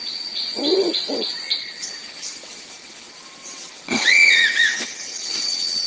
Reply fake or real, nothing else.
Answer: fake